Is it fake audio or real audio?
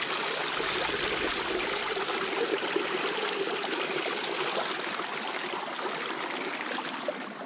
real